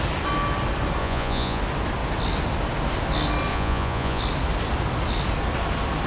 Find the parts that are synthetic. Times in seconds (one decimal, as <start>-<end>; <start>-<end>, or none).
1.0-1.6; 3.5-4.2